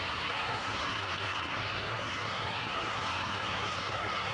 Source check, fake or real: fake